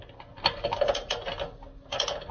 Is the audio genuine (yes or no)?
yes